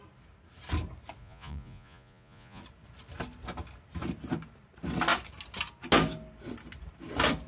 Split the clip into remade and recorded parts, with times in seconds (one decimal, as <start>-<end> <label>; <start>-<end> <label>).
0.0-1.2 recorded; 1.2-2.6 remade; 2.6-7.5 recorded